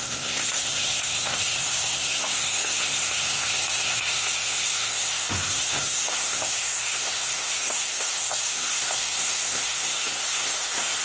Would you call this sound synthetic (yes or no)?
yes